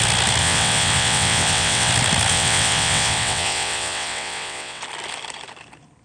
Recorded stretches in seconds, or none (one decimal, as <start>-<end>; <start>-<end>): 0.0-0.4; 1.9-2.3; 4.8-6.0